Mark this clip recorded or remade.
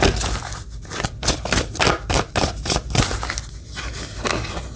recorded